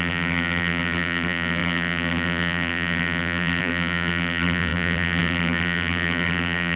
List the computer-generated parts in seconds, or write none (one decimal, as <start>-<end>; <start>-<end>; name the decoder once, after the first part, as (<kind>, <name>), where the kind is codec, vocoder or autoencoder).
0.0-6.8 (vocoder, BigVGAN v2)